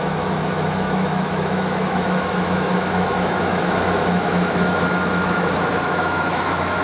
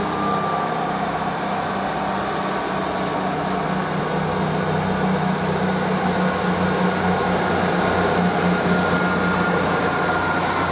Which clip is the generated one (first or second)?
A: first